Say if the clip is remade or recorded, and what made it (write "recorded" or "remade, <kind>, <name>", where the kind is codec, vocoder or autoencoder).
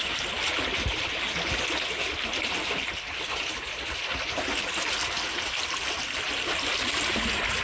recorded